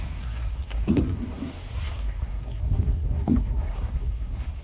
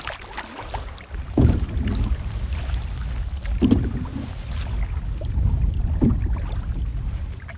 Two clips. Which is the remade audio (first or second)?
first